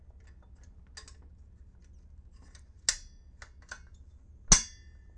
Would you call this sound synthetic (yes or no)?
no